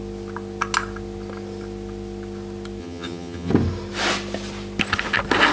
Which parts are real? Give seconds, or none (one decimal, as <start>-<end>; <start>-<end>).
0.0-2.8; 3.5-5.5